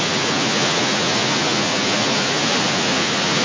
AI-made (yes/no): yes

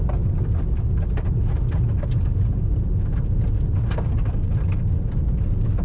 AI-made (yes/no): no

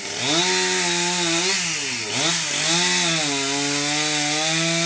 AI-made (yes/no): no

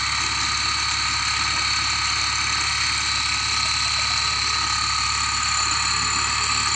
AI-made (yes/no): no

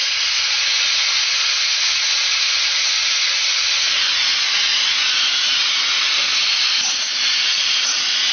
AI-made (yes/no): yes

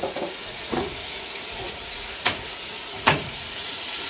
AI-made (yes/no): yes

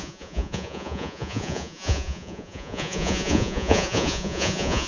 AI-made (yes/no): yes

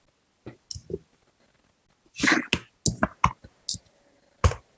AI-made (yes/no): no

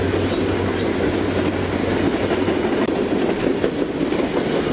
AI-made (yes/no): no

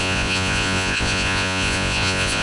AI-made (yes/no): yes